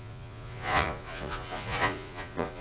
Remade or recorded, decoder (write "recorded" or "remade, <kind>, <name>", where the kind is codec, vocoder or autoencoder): remade, vocoder, Vocos